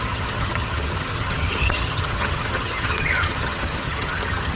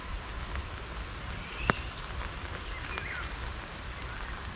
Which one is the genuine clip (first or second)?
second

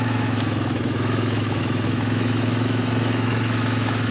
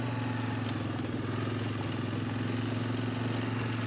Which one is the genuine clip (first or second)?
second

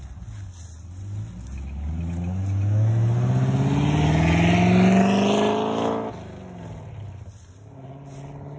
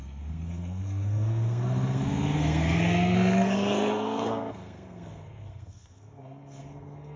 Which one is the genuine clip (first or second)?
first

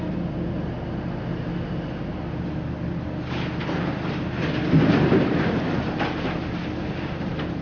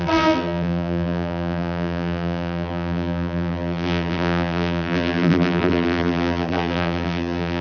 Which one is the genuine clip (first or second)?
first